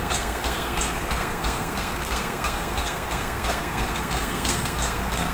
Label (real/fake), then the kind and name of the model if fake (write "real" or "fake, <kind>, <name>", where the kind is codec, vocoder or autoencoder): fake, codec, SNAC